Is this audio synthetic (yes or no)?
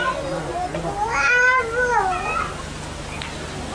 no